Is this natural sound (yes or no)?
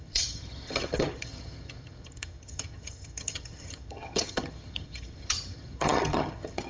no